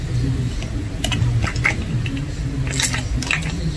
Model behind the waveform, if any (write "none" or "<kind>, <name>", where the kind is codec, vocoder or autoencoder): none